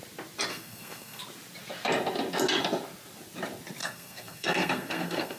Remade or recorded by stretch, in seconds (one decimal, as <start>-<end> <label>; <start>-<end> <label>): 0.0-0.5 recorded; 0.5-1.2 remade; 1.2-3.8 recorded; 3.8-5.4 remade